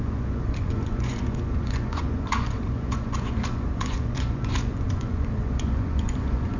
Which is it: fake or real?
fake